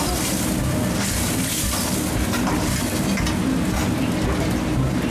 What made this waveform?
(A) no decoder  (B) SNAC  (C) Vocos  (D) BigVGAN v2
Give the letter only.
A